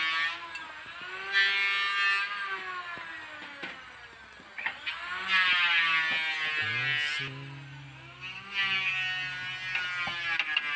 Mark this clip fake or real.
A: real